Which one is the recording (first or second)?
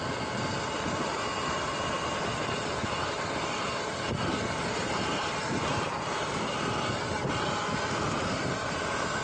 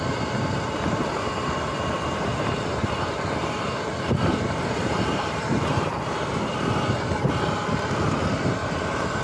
first